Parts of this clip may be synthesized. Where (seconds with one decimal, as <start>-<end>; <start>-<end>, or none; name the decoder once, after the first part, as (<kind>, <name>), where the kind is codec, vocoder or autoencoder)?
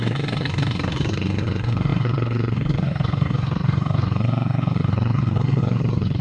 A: 0.0-6.2 (codec, SNAC)